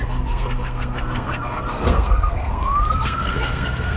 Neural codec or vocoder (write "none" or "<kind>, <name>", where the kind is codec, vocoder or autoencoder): codec, SNAC